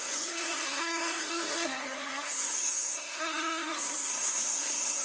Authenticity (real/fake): fake